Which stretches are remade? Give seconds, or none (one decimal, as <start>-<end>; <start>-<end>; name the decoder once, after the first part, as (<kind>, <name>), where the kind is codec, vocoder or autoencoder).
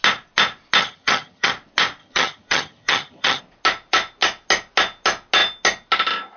0.8-1.5 (vocoder, HiFi-GAN); 2.0-3.4